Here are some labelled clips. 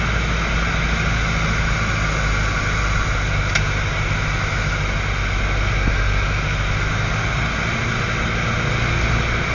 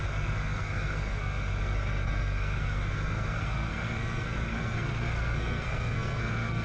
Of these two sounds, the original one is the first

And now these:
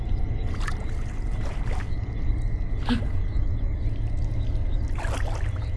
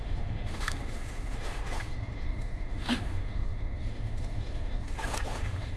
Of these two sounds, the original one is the first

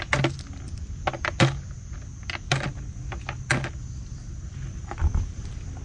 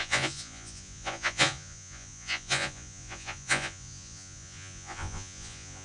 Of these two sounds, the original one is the first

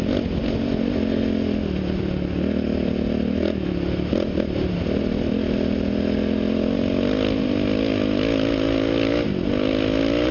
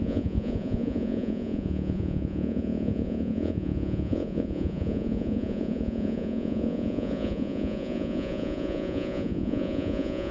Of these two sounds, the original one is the first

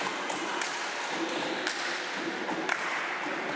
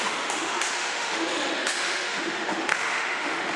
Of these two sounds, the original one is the first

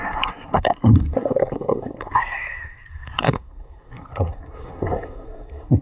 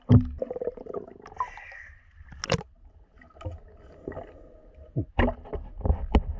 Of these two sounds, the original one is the second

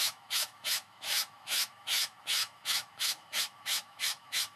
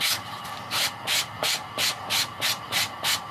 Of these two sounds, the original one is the second